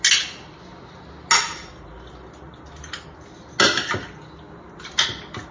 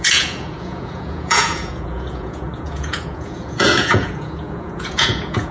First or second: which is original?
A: first